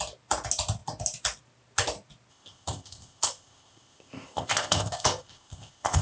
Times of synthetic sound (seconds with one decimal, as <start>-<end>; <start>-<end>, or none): 2.3-6.0